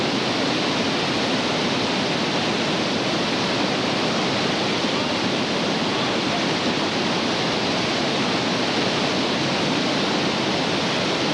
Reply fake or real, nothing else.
real